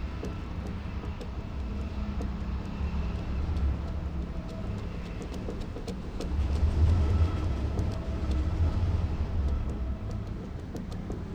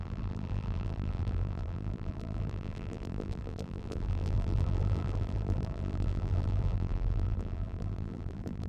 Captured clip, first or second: first